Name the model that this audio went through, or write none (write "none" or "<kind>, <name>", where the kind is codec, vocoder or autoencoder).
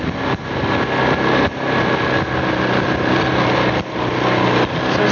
none